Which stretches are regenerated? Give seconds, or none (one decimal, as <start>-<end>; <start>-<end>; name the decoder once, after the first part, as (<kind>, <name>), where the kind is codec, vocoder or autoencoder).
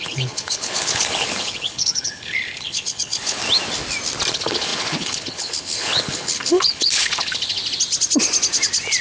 0.0-3.4 (codec, HILCodec); 4.3-7.6